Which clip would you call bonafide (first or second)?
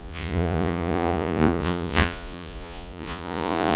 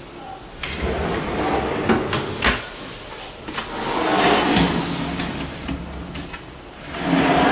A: second